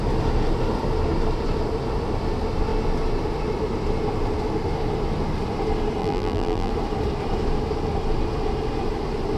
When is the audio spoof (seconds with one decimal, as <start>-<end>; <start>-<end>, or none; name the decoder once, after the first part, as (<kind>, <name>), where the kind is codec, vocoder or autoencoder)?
6.0-6.7 (vocoder, BigVGAN v2)